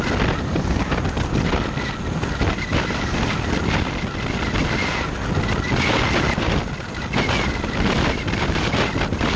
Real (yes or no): yes